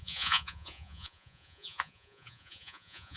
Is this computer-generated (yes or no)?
yes